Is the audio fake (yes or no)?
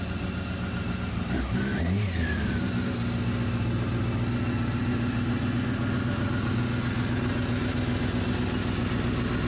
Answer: no